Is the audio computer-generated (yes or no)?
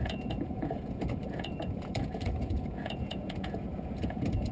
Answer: yes